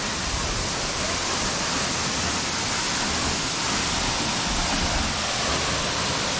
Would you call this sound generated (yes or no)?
no